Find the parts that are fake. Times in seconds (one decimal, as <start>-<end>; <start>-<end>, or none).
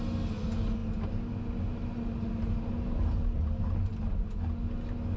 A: none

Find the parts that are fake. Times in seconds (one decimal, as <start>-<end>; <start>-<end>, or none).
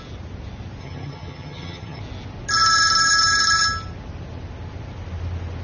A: 0.8-2.0